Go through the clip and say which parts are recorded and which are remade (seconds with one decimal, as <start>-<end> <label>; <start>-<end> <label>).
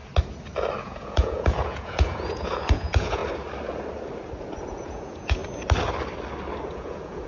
0.0-0.8 recorded; 0.8-3.2 remade; 3.2-4.7 recorded; 4.7-5.4 remade; 5.4-6.7 recorded; 6.7-7.3 remade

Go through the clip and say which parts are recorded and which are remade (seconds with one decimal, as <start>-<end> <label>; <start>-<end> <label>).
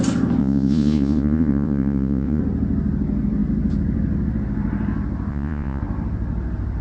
0.0-0.4 recorded; 0.4-2.4 remade; 2.4-5.3 recorded; 5.3-5.8 remade; 5.8-6.8 recorded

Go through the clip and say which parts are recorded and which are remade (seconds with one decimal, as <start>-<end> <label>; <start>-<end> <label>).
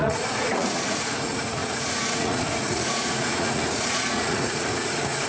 0.0-5.3 remade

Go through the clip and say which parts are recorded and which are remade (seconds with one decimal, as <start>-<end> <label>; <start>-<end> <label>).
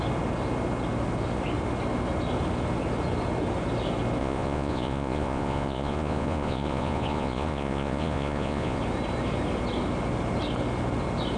0.0-4.2 recorded; 4.2-8.8 remade; 8.8-11.4 recorded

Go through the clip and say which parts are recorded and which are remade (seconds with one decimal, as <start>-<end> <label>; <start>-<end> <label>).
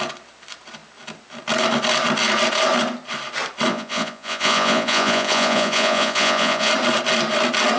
0.0-3.7 recorded; 3.7-6.7 remade; 6.7-7.8 recorded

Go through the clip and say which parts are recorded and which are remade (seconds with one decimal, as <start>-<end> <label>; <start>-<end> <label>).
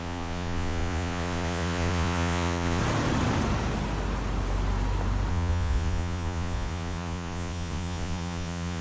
0.0-2.8 remade; 2.8-5.3 recorded; 5.3-8.8 remade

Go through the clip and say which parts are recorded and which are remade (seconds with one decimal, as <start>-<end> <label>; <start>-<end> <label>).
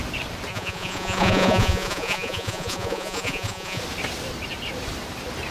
0.0-0.5 recorded; 0.5-3.8 remade; 3.8-5.5 recorded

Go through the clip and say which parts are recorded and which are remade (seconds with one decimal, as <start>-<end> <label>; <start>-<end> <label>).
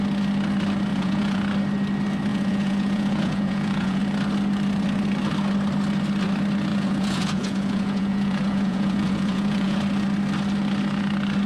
0.0-0.9 recorded; 0.9-1.4 remade; 1.4-2.3 recorded; 2.3-4.0 remade; 4.0-6.7 recorded; 6.7-9.8 remade; 9.8-11.5 recorded